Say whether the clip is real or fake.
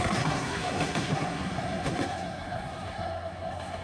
fake